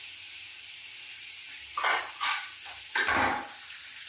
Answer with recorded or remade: recorded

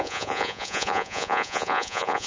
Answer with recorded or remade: remade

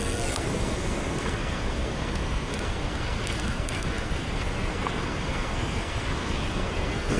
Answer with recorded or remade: remade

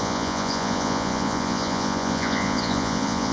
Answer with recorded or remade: remade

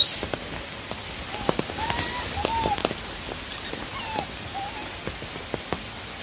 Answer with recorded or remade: recorded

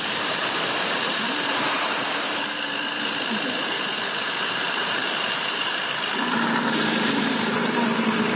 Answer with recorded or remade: remade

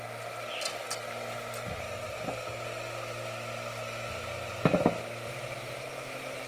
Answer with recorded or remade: recorded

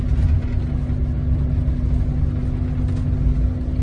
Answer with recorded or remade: recorded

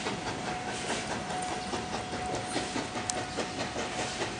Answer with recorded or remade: recorded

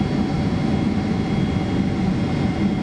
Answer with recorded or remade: recorded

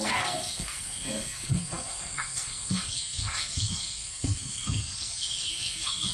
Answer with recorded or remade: remade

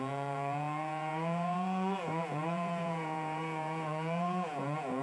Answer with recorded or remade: remade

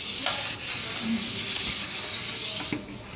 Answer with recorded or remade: recorded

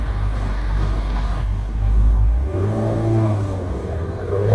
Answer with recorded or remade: remade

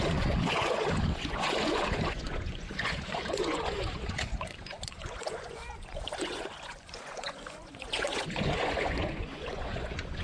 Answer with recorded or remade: remade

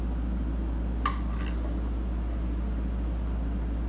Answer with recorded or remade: recorded